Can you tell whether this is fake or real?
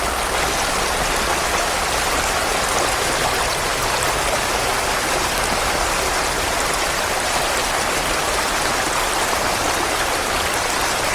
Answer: real